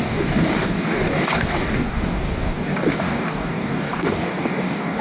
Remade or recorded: remade